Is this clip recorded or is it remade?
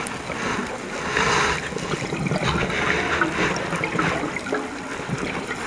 recorded